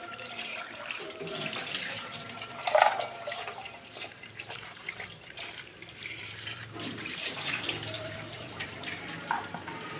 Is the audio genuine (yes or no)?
no